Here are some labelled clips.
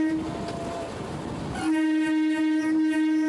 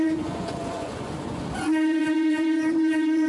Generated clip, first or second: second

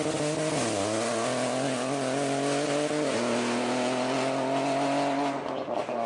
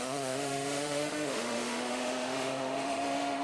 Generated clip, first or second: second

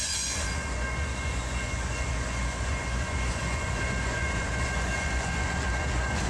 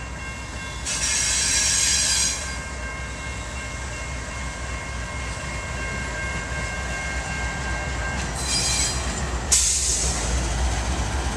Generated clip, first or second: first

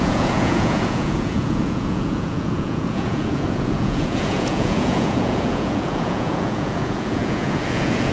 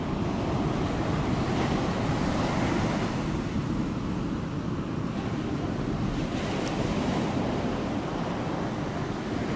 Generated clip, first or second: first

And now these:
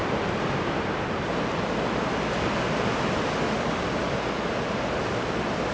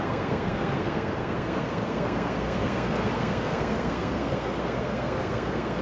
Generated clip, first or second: second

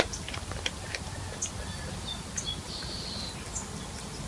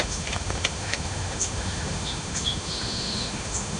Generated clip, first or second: second